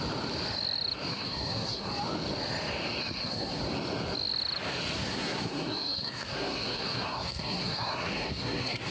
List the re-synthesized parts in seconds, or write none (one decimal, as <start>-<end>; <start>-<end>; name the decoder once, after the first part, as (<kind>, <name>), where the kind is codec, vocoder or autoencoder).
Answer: 1.1-1.9 (codec, SNAC); 3.0-3.6; 5.1-8.9